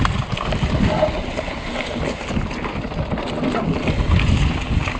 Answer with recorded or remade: recorded